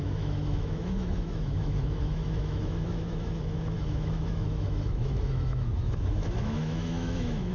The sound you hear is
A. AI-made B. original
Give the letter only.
A